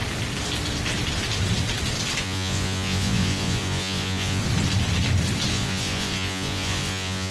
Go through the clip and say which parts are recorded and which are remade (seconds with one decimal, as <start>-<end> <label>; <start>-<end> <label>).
0.0-2.2 recorded; 2.2-4.4 remade; 4.4-5.5 recorded; 5.5-7.3 remade